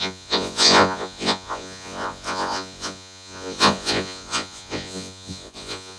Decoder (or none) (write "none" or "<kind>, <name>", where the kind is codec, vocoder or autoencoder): vocoder, Vocos